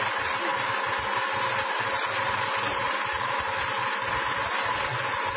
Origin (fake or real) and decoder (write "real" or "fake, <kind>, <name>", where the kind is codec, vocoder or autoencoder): real